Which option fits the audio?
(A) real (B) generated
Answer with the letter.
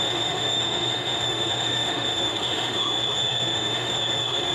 B